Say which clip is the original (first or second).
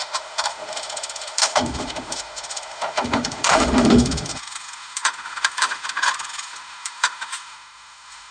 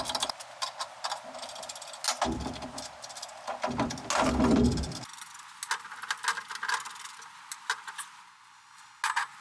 second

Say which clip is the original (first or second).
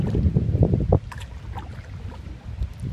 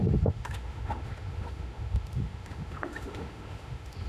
first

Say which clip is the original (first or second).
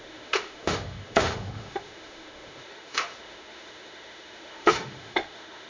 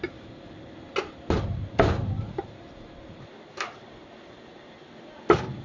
second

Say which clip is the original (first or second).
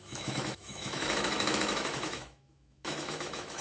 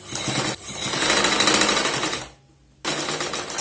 second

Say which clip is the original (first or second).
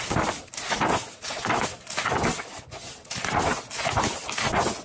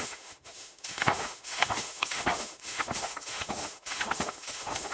first